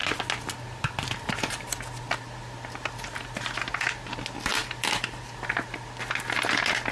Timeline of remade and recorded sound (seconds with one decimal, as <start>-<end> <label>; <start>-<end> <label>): 0.0-2.0 recorded; 2.0-6.9 remade